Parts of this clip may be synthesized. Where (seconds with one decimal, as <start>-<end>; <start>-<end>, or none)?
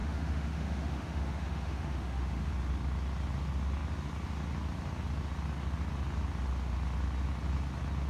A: 0.0-2.5